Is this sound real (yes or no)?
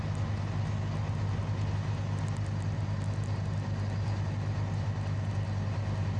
yes